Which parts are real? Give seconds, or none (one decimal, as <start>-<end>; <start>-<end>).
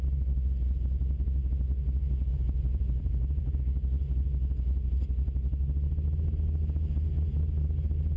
0.0-2.3; 3.6-8.2